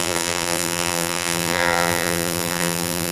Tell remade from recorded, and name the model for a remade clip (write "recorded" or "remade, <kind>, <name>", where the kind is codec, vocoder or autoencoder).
remade, vocoder, BigVGAN v2